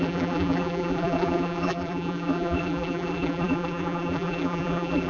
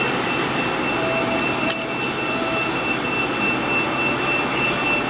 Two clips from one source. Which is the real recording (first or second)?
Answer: second